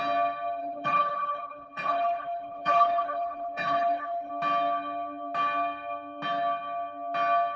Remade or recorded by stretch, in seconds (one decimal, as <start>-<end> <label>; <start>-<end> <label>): 0.0-0.6 recorded; 0.6-4.3 remade; 4.3-7.6 recorded